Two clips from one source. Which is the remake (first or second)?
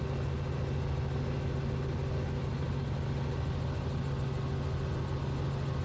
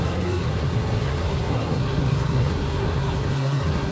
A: second